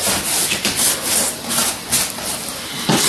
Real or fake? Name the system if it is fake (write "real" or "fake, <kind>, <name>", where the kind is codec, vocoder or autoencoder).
real